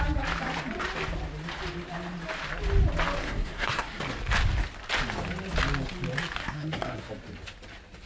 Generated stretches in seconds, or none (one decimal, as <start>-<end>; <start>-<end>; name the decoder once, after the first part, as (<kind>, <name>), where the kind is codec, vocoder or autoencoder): 3.2-4.0 (codec, SNAC); 6.4-7.1